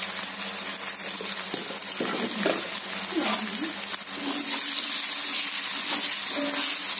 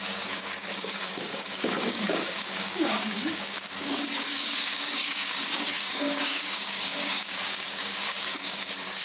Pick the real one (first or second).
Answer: first